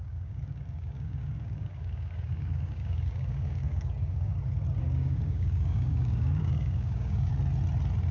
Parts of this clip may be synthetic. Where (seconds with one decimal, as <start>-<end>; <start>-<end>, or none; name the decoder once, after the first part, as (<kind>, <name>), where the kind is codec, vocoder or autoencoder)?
0.0-4.3 (codec, DAC); 4.8-7.3